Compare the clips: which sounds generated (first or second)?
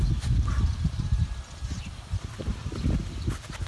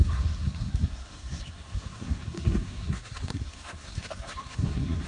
second